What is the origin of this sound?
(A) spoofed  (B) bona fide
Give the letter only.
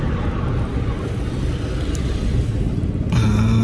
B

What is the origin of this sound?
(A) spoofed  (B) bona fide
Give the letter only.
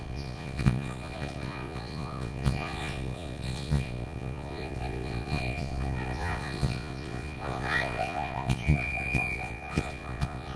A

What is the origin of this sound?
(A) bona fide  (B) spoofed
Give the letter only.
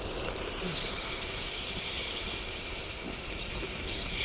B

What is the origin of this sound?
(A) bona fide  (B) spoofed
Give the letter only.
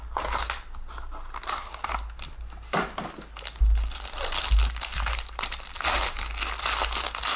A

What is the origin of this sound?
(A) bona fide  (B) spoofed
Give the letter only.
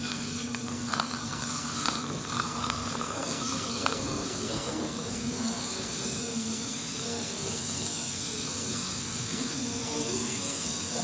B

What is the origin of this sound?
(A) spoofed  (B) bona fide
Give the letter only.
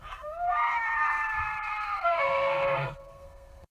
A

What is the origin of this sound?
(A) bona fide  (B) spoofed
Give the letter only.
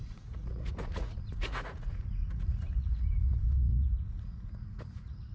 B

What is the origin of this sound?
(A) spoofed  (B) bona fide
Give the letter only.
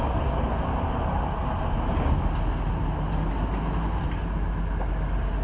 B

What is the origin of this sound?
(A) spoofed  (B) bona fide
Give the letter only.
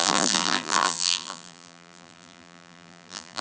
A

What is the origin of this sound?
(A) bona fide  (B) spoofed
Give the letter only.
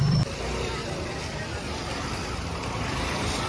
B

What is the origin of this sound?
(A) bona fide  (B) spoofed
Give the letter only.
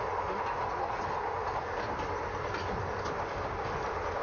A